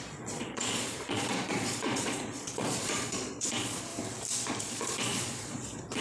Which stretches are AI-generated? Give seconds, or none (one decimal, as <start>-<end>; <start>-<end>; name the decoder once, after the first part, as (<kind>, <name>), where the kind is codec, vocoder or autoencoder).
0.0-3.9 (vocoder, Vocos); 4.6-6.0